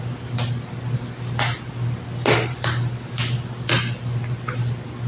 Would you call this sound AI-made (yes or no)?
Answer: no